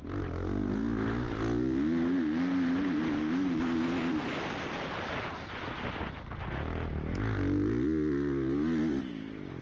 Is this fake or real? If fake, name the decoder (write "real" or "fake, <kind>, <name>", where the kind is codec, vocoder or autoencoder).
real